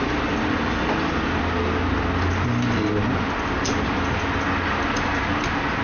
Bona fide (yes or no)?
yes